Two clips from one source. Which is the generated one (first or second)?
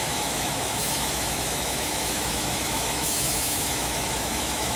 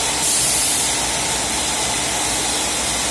first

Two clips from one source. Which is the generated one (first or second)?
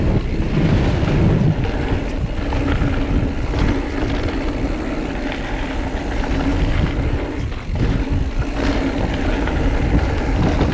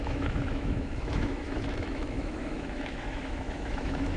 second